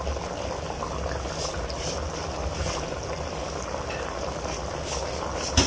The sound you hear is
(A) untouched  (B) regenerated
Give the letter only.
A